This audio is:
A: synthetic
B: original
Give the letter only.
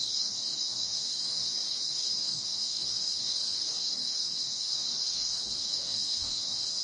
A